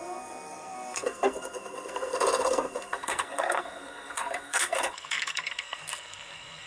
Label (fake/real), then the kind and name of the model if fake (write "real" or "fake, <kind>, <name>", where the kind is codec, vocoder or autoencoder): fake, codec, SNAC